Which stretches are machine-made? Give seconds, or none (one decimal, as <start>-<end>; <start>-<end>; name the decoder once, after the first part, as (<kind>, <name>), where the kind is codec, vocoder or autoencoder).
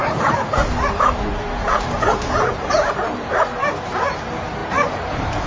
0.0-3.3 (vocoder, BigVGAN v2); 4.6-5.5